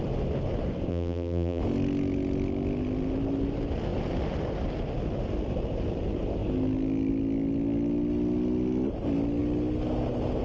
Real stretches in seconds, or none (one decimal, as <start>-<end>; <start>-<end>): 0.0-0.9; 1.6-10.4